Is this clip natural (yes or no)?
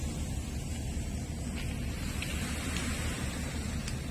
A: yes